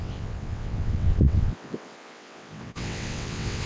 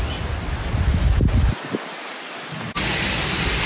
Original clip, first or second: second